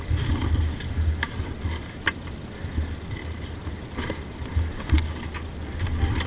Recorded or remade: recorded